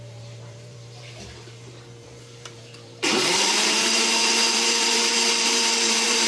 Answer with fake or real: fake